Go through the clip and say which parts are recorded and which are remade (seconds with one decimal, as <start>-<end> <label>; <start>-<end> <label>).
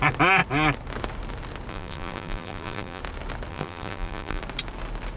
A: 0.0-1.7 recorded; 1.7-3.0 remade; 3.0-3.5 recorded; 3.5-4.4 remade; 4.4-5.2 recorded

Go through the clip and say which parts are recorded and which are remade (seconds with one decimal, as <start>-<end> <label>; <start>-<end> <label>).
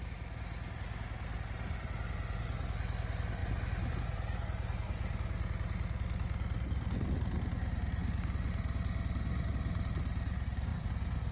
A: 0.0-3.4 recorded; 3.4-3.9 remade; 3.9-10.7 recorded; 10.7-11.3 remade